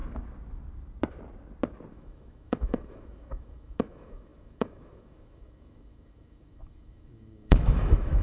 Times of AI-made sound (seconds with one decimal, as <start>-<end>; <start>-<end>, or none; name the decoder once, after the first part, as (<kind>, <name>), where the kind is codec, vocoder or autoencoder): 1.9-8.2 (autoencoder, DAC-VAE)